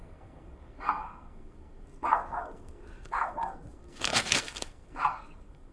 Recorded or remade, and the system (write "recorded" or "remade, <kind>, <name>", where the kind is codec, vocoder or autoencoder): remade, codec, SNAC